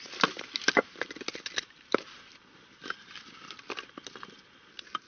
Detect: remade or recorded recorded